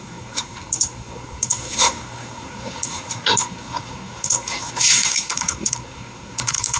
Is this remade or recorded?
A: remade